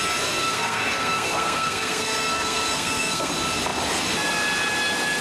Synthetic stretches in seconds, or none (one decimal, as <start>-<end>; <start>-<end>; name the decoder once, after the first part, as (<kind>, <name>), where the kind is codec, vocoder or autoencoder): 0.4-3.3 (codec, SNAC)